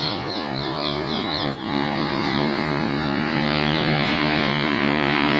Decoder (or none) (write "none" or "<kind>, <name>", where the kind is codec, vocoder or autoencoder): vocoder, Vocos